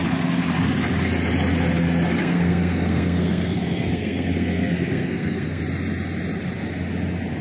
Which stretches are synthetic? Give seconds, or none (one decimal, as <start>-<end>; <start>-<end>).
2.2-5.6